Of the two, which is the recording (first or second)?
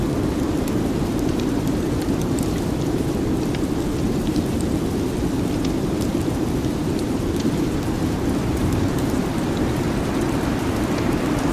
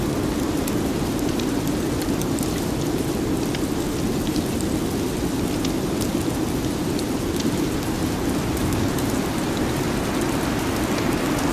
second